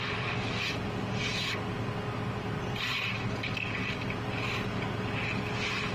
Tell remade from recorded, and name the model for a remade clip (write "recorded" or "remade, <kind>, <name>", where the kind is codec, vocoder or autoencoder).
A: recorded